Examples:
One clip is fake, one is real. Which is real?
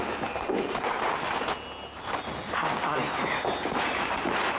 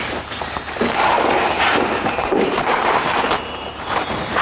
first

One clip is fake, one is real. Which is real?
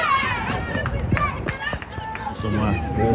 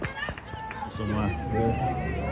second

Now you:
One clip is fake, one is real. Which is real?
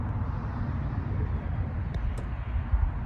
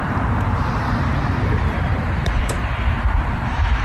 first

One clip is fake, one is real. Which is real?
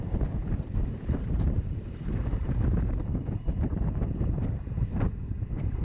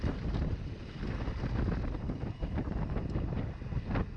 second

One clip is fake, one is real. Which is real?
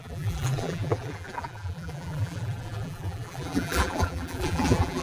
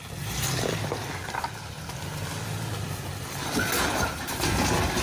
second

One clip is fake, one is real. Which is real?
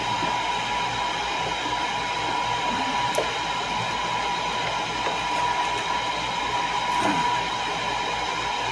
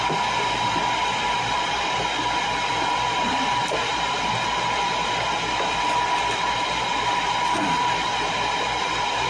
first